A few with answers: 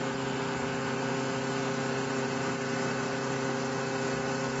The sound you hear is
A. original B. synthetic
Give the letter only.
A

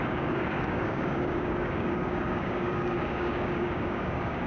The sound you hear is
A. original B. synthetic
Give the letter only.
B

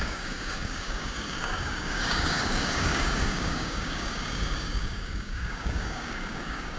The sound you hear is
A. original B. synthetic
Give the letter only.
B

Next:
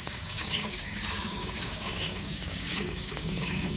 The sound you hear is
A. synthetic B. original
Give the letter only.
A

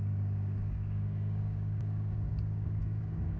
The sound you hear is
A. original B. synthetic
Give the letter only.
B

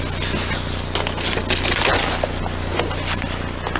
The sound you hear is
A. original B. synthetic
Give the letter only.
A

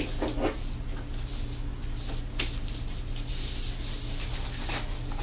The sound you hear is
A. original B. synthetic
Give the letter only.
A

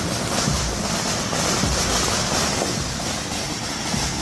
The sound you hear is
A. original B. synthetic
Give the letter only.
A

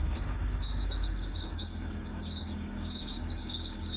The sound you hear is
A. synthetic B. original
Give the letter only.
A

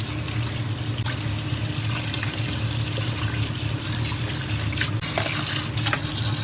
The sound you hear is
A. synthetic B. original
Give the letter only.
B